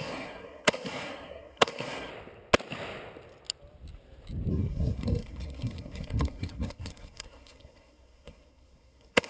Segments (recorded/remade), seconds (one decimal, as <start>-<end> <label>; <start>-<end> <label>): 0.0-2.1 remade; 2.1-4.5 recorded; 4.5-9.3 remade